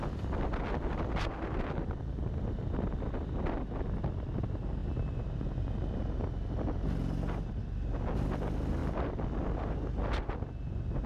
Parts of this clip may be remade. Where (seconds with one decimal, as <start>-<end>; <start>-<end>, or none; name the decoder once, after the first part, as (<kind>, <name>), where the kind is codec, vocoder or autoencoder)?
none

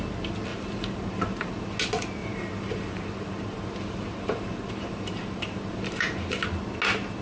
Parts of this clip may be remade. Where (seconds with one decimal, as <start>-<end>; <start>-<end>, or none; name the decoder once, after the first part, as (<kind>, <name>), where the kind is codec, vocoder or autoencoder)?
0.5-1.5 (vocoder, BigVGAN v2); 2.2-6.4

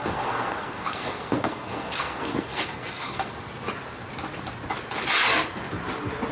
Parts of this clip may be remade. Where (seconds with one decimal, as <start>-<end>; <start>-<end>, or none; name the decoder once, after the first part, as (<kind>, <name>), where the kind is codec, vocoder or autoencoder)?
0.0-3.4 (codec, SNAC)

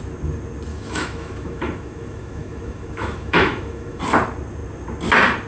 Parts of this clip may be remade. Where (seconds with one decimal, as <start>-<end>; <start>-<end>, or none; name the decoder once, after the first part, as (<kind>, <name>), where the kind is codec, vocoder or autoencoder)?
0.7-4.0 (autoencoder, DAC-VAE)

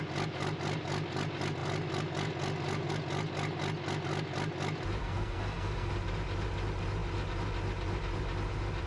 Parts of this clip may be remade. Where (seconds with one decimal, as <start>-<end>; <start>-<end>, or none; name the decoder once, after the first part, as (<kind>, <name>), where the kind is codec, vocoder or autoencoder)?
5.0-5.9 (codec, SNAC)

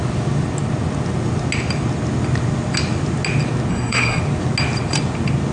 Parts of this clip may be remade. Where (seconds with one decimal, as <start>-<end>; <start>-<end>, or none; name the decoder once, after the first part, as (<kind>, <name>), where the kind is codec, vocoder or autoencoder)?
3.7-4.2 (codec, SNAC)

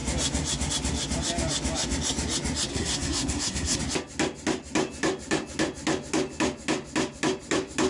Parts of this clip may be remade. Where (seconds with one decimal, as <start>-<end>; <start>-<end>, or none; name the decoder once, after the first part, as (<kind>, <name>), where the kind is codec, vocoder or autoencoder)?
2.7-3.8 (codec, SNAC)